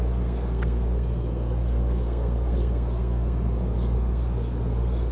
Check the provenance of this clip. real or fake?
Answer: fake